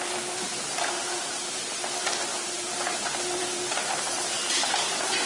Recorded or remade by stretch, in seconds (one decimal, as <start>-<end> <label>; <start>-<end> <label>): 0.0-5.3 recorded